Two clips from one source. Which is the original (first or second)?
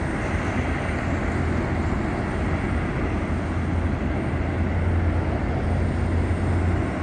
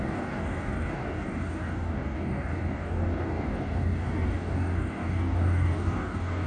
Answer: first